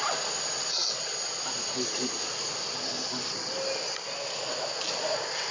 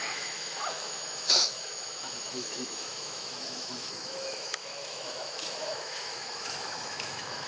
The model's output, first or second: second